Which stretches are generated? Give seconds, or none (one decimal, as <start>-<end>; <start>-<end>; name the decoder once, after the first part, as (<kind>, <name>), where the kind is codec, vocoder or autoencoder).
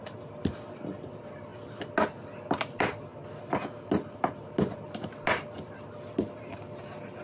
none